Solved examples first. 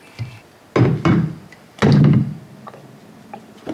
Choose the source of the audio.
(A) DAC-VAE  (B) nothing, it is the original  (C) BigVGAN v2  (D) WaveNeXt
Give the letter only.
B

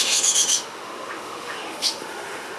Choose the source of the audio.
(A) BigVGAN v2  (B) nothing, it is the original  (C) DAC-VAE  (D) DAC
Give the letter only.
C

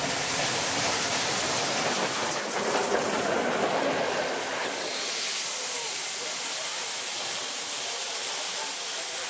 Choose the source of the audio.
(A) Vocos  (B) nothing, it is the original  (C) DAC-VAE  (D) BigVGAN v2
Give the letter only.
B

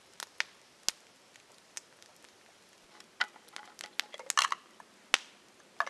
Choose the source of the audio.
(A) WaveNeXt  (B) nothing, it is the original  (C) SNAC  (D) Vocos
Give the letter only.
B